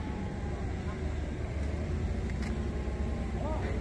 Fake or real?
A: real